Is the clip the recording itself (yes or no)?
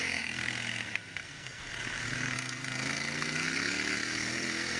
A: no